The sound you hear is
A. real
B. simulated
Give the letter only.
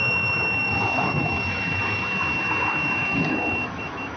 B